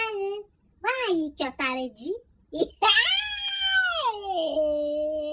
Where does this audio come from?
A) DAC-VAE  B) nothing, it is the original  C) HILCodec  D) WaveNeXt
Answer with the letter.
B